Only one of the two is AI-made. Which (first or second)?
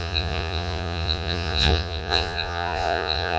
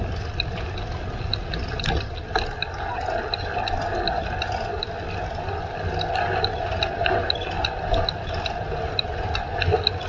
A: first